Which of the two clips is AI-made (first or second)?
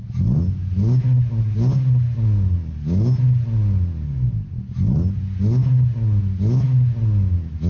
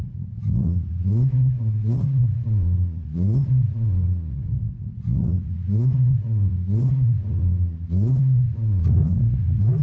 second